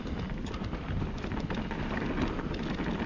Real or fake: real